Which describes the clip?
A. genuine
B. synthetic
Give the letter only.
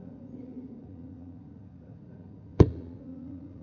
B